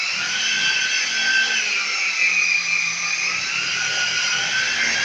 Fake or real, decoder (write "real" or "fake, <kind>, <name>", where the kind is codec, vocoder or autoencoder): real